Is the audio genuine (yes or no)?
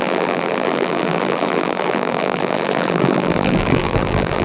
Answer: no